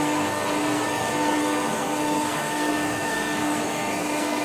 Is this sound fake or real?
fake